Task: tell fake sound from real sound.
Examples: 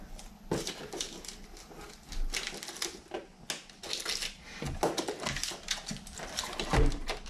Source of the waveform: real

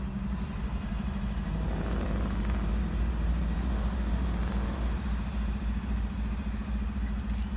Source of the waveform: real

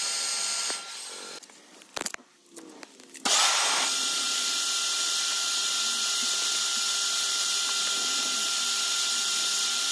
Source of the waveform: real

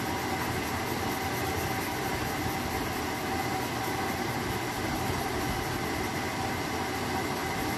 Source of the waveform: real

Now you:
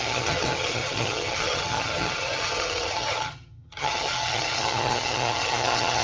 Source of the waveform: fake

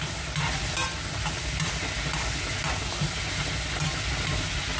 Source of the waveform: real